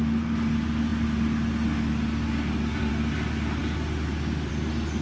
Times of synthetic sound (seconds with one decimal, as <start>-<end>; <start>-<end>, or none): none

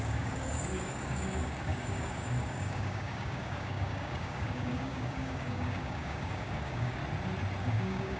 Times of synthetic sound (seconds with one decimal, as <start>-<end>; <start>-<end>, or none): 0.0-7.0; 7.6-8.2

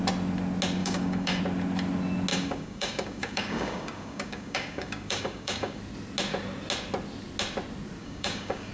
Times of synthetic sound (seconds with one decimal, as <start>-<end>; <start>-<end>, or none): 0.8-1.4; 2.3-5.8; 8.0-8.7